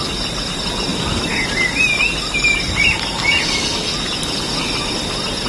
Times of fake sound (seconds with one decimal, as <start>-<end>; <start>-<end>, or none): none